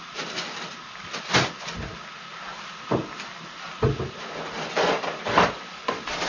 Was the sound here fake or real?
real